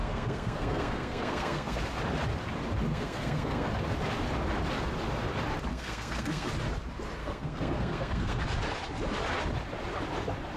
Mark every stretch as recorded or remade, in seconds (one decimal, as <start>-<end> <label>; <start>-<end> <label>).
0.0-1.8 remade; 1.8-2.9 recorded; 2.9-3.7 remade; 3.7-5.7 recorded; 5.7-6.5 remade; 6.5-7.2 recorded; 7.2-8.4 remade; 8.4-10.6 recorded